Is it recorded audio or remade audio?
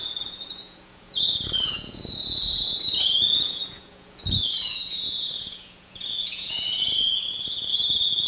remade